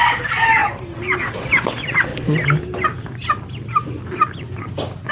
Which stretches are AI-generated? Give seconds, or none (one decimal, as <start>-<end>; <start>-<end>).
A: none